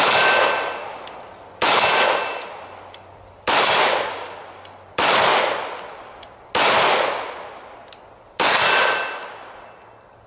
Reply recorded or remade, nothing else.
recorded